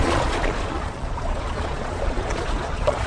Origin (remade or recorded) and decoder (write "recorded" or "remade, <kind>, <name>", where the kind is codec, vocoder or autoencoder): remade, vocoder, Vocos